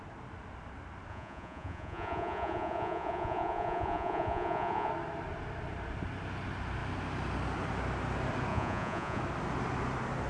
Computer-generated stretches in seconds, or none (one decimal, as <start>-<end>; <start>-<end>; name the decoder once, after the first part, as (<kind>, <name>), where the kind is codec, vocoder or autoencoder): 1.1-4.9 (vocoder, Vocos); 8.5-9.2